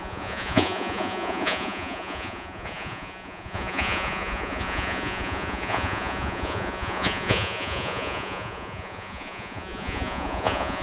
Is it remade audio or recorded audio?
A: remade